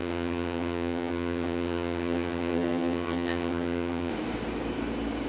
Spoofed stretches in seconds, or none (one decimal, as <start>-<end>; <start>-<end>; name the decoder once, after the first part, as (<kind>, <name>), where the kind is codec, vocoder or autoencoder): 0.0-4.1 (vocoder, HiFi-GAN)